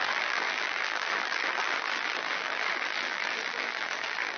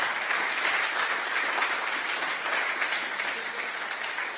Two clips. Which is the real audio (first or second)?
second